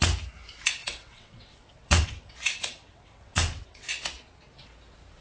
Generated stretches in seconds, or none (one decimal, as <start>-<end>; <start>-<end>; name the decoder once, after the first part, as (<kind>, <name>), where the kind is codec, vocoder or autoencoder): 0.8-3.9 (vocoder, WaveNeXt)